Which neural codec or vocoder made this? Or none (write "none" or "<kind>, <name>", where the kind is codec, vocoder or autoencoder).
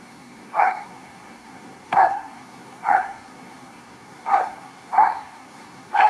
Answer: codec, SNAC